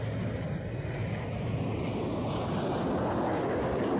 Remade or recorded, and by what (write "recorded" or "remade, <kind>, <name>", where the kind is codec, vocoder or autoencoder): recorded